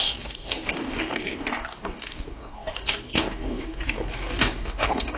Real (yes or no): no